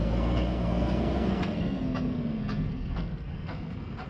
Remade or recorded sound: remade